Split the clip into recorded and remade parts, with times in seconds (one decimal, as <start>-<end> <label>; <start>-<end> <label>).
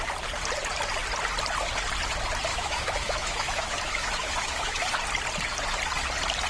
0.0-2.5 recorded; 2.5-4.8 remade; 4.8-6.5 recorded